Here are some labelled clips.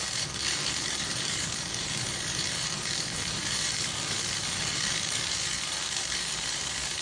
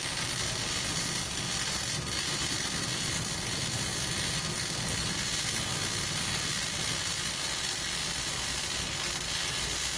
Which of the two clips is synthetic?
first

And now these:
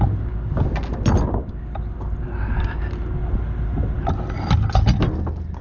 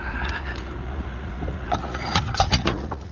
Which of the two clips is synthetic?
second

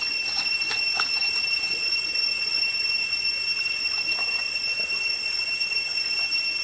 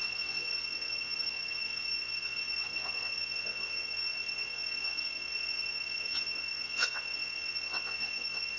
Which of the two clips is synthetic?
second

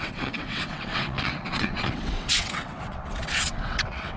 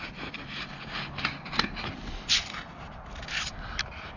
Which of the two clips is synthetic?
first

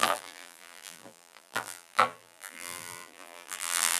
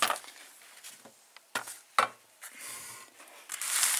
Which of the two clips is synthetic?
first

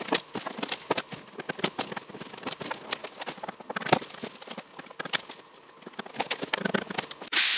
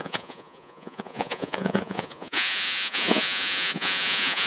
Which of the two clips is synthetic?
second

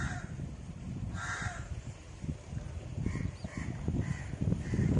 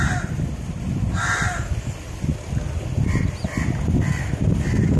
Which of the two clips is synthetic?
first